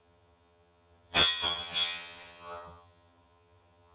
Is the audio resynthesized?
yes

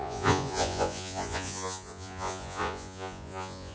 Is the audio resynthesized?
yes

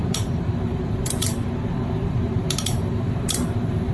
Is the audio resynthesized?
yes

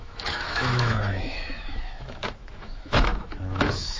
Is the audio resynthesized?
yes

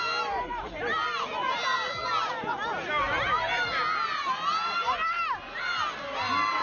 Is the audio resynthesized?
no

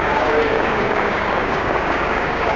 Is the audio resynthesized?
yes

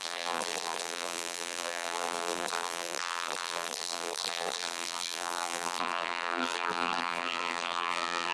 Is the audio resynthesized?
yes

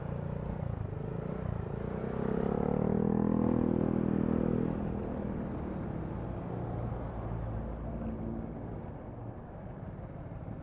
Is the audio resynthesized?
no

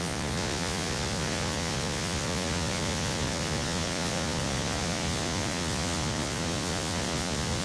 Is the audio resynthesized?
yes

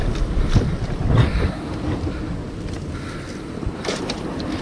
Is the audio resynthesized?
no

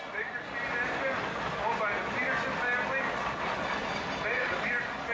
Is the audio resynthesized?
no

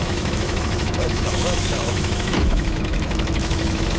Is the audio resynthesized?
yes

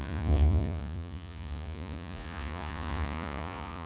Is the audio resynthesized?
yes